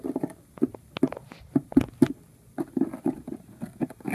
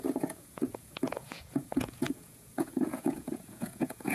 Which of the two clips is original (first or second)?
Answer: first